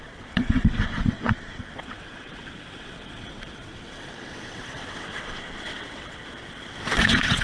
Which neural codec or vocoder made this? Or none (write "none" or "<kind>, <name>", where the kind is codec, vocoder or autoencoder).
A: vocoder, WaveNeXt